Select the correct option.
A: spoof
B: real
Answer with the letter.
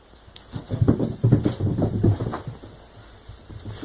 B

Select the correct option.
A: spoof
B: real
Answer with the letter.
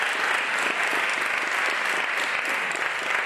B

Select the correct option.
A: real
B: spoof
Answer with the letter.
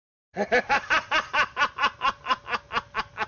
A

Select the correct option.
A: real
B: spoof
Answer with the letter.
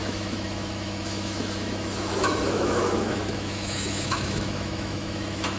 B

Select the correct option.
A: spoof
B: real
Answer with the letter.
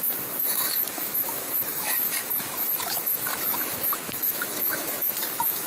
A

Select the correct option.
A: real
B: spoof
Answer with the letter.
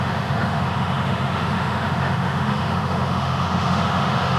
B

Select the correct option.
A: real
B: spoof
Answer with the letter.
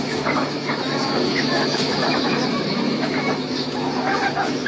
B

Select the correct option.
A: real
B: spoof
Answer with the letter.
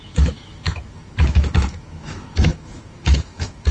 B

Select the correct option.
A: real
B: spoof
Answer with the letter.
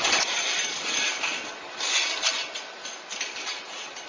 A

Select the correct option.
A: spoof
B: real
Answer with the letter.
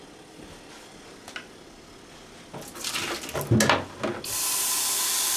B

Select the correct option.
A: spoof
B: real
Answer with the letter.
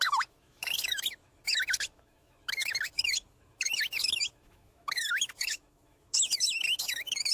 A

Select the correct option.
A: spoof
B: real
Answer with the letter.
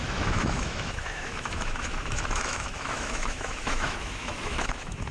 A